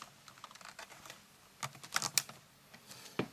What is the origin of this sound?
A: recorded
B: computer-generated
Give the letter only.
A